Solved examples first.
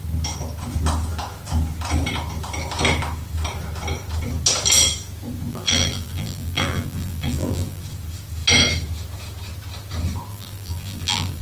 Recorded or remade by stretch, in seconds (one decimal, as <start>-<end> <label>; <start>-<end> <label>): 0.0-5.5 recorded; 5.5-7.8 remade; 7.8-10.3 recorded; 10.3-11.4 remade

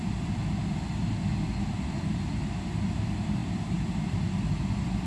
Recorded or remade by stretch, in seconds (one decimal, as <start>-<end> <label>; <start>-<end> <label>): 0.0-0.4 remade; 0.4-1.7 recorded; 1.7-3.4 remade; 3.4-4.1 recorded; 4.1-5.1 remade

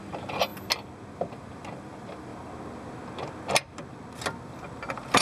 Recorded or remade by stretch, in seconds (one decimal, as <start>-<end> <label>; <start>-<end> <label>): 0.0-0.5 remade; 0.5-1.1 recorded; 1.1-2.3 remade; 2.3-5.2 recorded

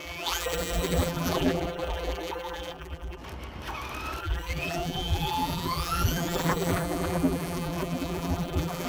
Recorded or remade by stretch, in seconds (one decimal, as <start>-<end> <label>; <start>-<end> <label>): 0.0-3.2 remade; 3.2-4.2 recorded; 4.2-8.9 remade

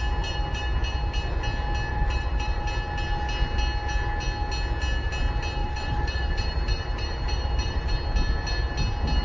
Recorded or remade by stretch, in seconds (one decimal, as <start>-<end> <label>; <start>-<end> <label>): 0.0-1.9 recorded; 1.9-2.6 remade; 2.6-5.6 recorded; 5.6-7.9 remade; 7.9-9.2 recorded

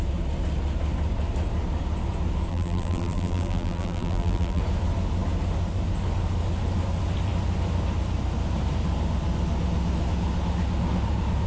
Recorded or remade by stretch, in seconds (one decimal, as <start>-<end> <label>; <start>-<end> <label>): 0.0-2.5 recorded; 2.5-4.6 remade; 4.6-11.5 recorded

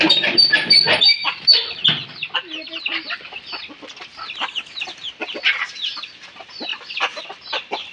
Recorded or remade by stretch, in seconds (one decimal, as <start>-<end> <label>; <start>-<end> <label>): 0.0-6.7 remade; 6.7-7.2 recorded; 7.2-7.9 remade

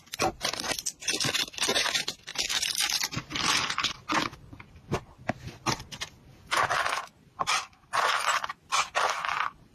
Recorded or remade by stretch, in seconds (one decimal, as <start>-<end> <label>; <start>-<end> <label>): 0.0-9.7 recorded